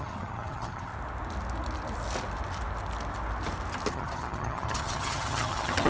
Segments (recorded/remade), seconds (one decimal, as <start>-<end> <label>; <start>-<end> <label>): 0.0-0.9 remade; 0.9-3.9 recorded; 3.9-5.9 remade

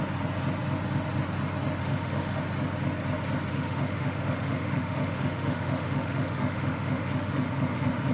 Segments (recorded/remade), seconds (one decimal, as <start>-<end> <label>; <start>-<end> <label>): 0.0-1.8 recorded; 1.8-2.4 remade; 2.4-3.5 recorded; 3.5-8.1 remade

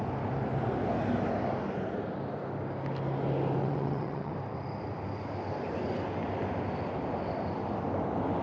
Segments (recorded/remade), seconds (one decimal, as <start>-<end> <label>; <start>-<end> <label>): 0.0-3.6 recorded; 3.6-4.3 remade; 4.3-8.4 recorded

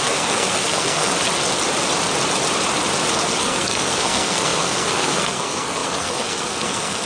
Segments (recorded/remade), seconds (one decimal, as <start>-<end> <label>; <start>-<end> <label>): 0.0-1.1 remade; 1.1-3.4 recorded; 3.4-7.1 remade